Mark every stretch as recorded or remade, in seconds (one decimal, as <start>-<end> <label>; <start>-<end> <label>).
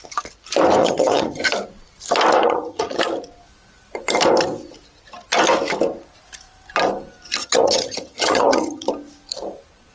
0.0-0.8 recorded; 0.8-1.4 remade; 1.4-2.4 recorded; 2.4-3.0 remade; 3.0-7.4 recorded; 7.4-8.9 remade; 8.9-9.9 recorded